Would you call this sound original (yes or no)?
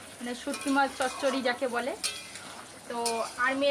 yes